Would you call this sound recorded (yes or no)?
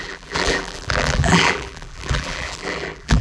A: no